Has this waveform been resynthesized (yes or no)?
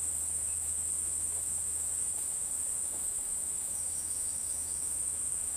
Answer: yes